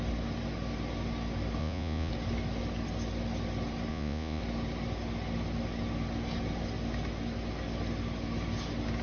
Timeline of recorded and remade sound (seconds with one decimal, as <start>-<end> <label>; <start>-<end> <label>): 0.0-1.6 recorded; 1.6-2.1 remade; 2.1-3.9 recorded; 3.9-4.4 remade; 4.4-9.0 recorded